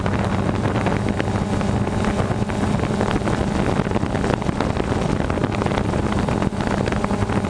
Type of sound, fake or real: real